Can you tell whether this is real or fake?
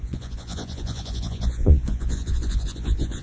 fake